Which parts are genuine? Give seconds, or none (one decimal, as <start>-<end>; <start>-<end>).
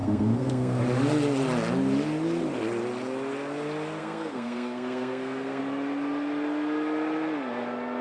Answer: 0.8-4.0; 5.6-8.0